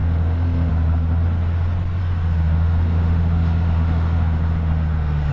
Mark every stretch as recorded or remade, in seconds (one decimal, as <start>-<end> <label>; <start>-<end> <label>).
0.0-0.7 remade; 0.7-2.0 recorded; 2.0-5.3 remade